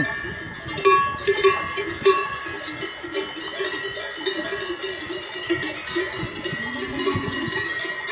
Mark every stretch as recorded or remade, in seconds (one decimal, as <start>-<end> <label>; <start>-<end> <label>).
0.0-0.5 remade; 0.5-1.2 recorded; 1.2-8.1 remade

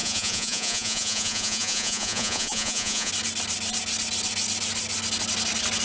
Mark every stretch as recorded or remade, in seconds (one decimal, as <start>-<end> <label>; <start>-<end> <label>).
0.0-3.1 remade; 3.1-5.8 recorded

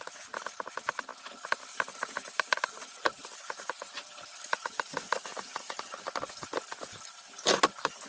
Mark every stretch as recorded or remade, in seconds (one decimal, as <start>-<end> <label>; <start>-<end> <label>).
0.0-8.1 recorded